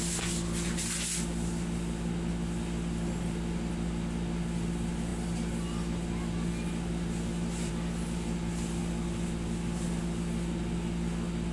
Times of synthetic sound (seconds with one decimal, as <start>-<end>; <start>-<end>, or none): none